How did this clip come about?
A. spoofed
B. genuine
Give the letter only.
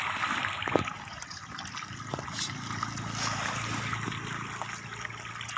B